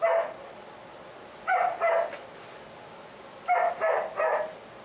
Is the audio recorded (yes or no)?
yes